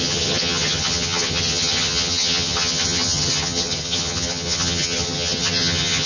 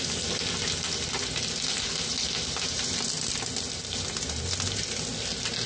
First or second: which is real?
second